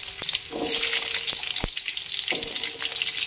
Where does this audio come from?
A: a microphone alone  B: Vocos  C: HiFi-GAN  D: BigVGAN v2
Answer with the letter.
A